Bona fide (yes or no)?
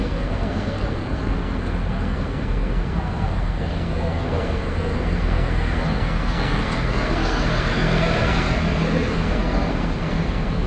no